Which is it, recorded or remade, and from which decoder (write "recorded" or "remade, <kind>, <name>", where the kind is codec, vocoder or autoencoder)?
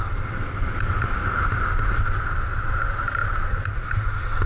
recorded